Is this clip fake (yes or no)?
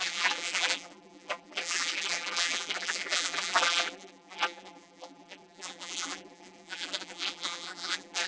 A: yes